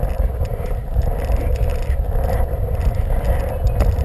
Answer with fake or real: real